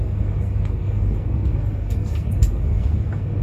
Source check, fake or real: fake